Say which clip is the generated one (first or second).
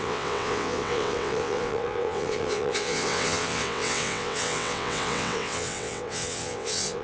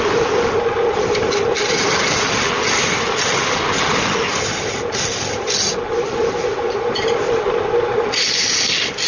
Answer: first